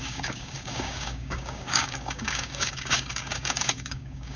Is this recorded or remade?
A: remade